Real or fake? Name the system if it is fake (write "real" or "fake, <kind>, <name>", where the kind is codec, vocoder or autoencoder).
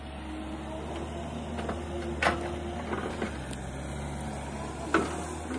real